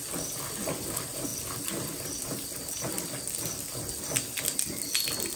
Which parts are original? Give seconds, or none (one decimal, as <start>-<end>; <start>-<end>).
0.0-5.4